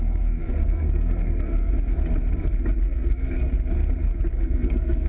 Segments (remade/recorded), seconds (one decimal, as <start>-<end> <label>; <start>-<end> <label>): 0.0-1.7 remade; 1.7-2.8 recorded; 2.8-3.5 remade; 3.5-4.3 recorded; 4.3-5.1 remade